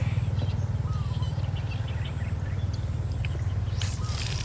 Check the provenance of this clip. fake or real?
real